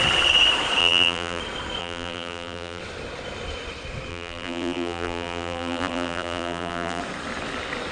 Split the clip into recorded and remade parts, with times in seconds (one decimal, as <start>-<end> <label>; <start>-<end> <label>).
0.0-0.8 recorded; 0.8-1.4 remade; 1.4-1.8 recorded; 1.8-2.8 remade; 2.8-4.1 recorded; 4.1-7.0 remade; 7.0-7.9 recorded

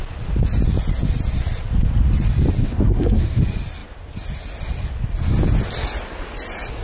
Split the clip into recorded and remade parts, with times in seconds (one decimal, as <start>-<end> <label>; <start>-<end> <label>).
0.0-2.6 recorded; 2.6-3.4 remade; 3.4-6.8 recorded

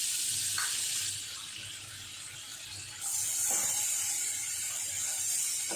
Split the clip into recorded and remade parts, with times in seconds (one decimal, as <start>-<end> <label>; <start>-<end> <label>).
0.0-5.8 recorded

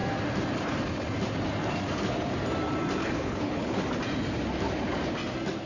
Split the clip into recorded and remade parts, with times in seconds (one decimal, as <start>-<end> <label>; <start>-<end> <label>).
0.0-3.0 recorded; 3.0-3.8 remade; 3.8-5.7 recorded

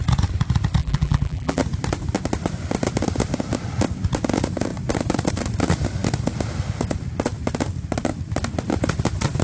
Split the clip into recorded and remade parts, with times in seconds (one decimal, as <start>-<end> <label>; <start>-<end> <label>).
0.0-0.8 recorded; 0.8-1.6 remade; 1.6-9.4 recorded